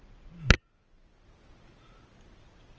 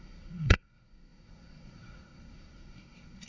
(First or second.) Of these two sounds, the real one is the first